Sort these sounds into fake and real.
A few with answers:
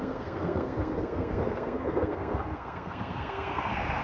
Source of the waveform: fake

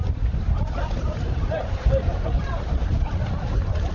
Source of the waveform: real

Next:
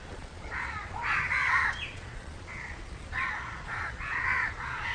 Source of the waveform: fake